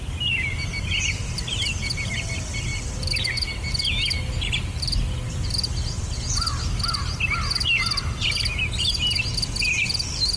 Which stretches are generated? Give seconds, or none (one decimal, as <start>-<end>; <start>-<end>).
none